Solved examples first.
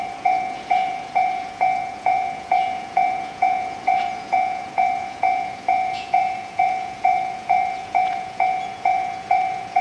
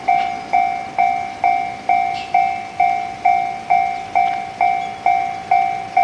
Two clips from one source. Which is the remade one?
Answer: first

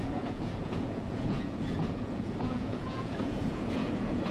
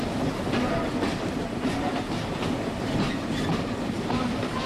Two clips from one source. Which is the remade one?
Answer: first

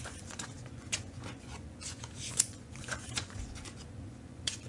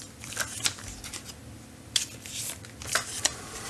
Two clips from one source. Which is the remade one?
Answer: first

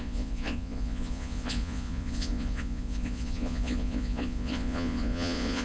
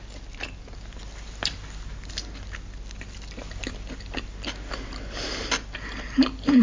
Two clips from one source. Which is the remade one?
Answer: first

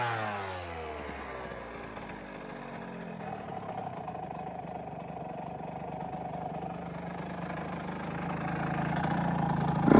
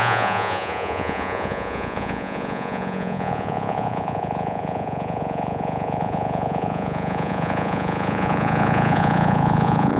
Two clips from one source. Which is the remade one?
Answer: second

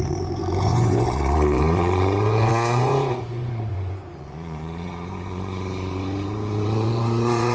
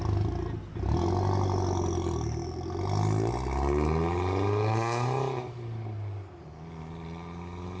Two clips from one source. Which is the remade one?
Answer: first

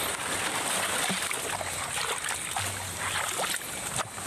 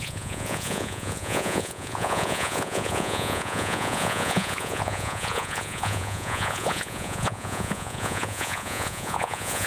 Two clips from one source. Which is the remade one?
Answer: second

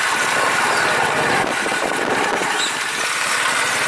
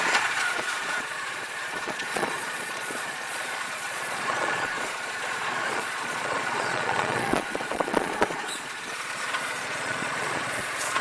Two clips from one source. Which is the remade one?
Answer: second